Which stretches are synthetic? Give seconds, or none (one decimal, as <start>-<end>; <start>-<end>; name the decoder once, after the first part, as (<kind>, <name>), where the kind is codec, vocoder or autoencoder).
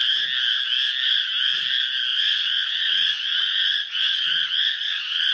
2.1-5.3 (vocoder, Vocos)